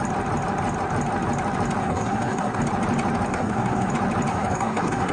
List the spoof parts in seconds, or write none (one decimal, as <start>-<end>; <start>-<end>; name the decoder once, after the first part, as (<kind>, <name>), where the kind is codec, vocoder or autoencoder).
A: 1.8-2.6 (codec, SNAC); 3.3-3.9; 4.3-5.1